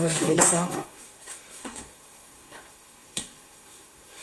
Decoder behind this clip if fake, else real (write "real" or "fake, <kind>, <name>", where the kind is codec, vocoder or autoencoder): fake, codec, SNAC